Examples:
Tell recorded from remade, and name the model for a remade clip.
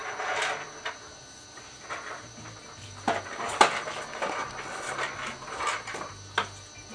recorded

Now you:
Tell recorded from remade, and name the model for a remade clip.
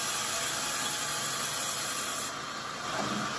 recorded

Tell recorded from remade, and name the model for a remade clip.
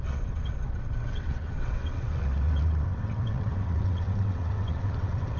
remade, vocoder, WaveNeXt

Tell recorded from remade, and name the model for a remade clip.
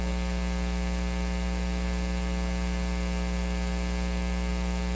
recorded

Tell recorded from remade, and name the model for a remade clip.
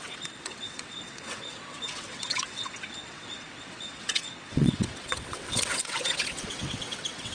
remade, vocoder, WaveNeXt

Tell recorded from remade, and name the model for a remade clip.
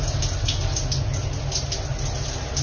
recorded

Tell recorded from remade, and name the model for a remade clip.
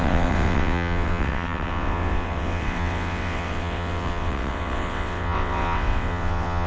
remade, vocoder, WaveNeXt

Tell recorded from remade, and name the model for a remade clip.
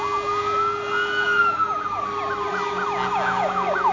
recorded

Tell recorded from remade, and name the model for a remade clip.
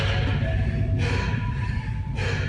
recorded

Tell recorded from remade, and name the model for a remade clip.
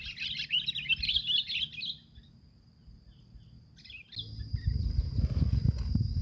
recorded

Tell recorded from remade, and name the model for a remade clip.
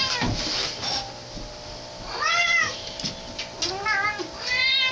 recorded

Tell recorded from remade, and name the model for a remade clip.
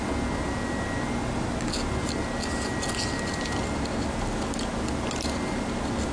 recorded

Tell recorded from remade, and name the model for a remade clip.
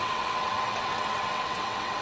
remade, vocoder, WaveNeXt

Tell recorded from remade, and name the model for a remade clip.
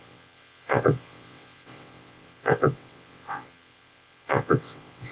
remade, vocoder, WaveNeXt